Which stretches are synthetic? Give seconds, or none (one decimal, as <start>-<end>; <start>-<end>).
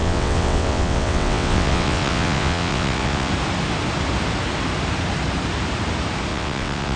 0.0-3.3; 6.3-7.0